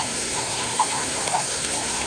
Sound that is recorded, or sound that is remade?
remade